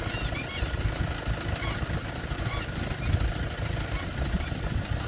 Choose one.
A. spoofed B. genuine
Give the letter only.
A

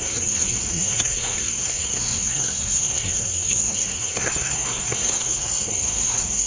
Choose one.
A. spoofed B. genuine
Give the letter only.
A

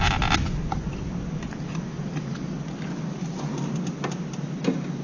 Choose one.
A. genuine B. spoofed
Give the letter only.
A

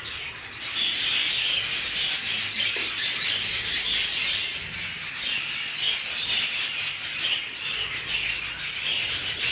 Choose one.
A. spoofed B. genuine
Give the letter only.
B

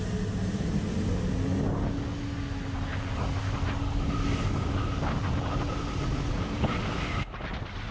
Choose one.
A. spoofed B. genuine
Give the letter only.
B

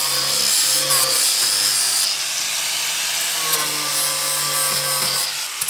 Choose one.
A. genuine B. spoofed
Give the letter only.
A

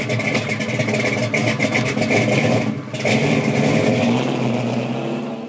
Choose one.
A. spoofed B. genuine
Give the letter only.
B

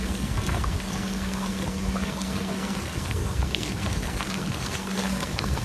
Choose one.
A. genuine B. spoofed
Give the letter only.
B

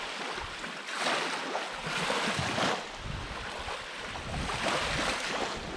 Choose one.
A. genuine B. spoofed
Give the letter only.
A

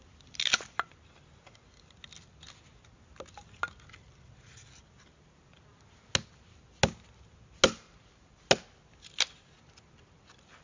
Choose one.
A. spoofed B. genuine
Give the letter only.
B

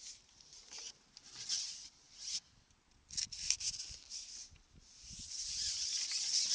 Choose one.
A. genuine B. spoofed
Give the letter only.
A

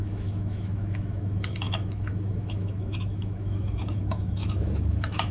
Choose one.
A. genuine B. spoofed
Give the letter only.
B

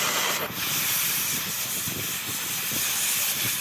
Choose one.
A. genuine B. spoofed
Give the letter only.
A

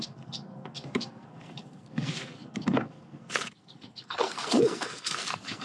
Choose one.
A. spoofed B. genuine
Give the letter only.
A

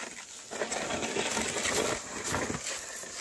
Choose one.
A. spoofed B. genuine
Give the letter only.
B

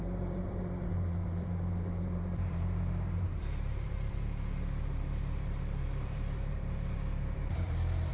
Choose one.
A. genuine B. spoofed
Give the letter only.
B